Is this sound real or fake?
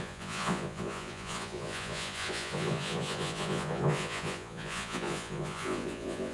fake